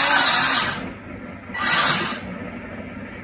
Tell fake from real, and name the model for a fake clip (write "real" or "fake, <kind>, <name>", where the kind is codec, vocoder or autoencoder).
real